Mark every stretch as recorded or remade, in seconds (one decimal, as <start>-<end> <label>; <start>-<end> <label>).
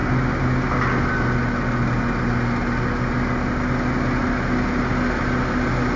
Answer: 0.0-6.0 recorded